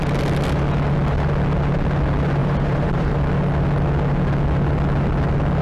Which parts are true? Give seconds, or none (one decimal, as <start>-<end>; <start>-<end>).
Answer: 0.0-2.4; 3.1-5.6